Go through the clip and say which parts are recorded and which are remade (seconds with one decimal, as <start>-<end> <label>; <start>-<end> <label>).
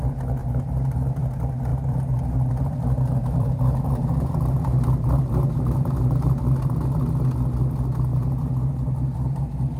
0.0-0.4 recorded; 0.4-1.2 remade; 1.2-1.7 recorded; 1.7-6.4 remade; 6.4-8.1 recorded; 8.1-9.4 remade; 9.4-9.8 recorded